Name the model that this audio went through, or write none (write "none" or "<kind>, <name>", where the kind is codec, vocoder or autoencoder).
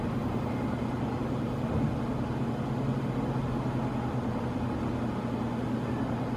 none